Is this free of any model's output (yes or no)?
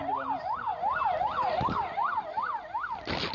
yes